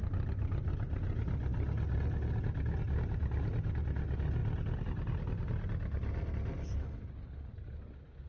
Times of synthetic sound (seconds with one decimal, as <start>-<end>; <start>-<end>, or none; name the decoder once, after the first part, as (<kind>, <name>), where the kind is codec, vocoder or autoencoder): none